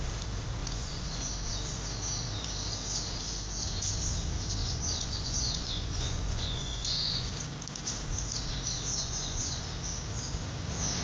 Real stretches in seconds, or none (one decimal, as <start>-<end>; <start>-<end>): 0.0-0.6; 1.3-4.6; 7.3-9.0; 9.6-11.0